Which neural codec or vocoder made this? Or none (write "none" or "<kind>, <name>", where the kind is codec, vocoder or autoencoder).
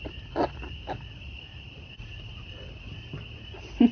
none